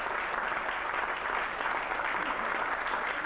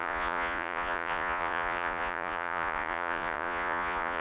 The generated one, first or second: second